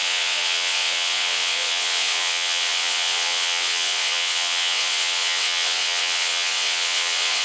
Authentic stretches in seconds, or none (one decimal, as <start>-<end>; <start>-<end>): none